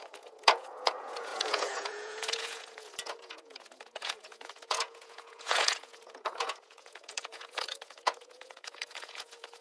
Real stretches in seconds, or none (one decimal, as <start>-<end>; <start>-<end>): none